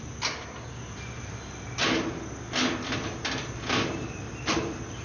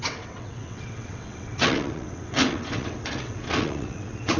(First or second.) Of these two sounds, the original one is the first